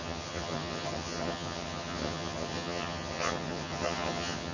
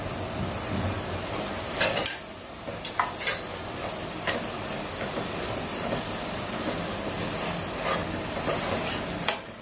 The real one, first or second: second